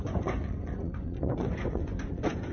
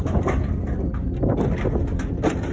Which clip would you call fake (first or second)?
first